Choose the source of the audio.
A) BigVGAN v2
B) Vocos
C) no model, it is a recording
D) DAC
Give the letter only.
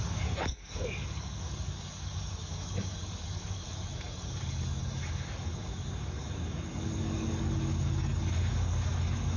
D